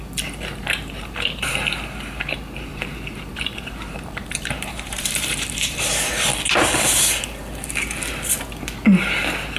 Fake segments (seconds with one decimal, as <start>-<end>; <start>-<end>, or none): 0.5-1.5; 2.7-6.3